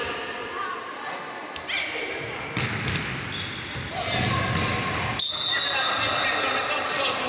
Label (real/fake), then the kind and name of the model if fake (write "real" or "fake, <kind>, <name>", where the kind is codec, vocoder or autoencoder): real